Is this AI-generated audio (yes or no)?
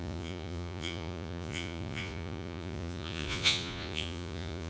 yes